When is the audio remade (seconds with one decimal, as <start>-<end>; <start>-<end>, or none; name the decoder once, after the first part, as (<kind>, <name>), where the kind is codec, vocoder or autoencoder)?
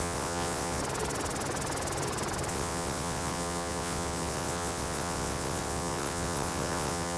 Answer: 0.0-0.8 (vocoder, WaveNeXt); 2.5-7.2